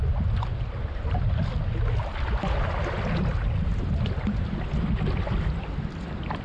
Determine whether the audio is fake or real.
real